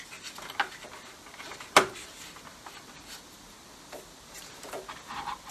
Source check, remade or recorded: recorded